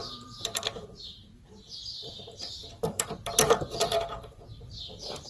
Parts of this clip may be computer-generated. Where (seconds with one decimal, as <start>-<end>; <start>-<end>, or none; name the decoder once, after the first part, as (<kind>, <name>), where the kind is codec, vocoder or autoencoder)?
0.0-0.6 (vocoder, BigVGAN v2); 2.0-5.3